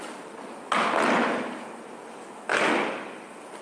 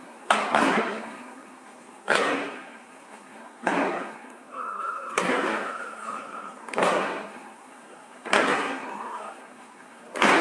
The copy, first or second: second